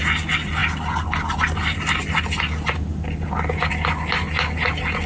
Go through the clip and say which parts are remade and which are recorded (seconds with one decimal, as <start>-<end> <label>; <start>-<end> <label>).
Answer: 0.0-5.1 recorded